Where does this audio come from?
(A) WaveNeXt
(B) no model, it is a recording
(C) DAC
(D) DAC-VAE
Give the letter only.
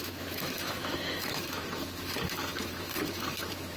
D